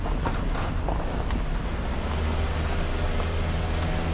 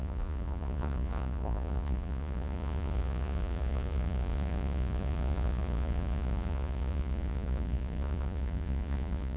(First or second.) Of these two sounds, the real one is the first